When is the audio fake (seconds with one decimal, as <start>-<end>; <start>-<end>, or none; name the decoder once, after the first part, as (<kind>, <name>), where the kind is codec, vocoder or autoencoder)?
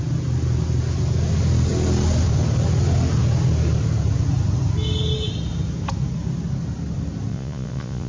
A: 7.3-8.1 (vocoder, Vocos)